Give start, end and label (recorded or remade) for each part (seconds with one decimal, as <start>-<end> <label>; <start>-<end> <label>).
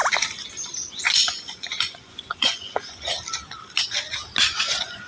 0.0-0.9 recorded; 0.9-3.1 remade; 3.1-4.4 recorded; 4.4-5.1 remade